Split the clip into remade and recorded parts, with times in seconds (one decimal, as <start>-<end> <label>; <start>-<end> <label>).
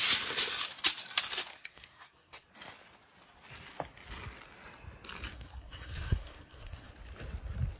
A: 0.0-1.5 recorded; 1.5-2.5 remade; 2.5-5.3 recorded; 5.3-6.9 remade; 6.9-7.8 recorded